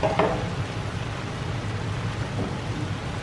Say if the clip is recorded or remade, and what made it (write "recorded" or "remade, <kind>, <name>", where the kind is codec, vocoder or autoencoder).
recorded